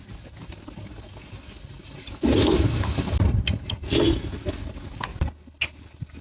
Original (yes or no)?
yes